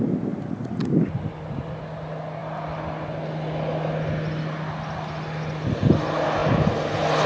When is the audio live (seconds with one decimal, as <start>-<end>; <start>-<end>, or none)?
0.0-7.3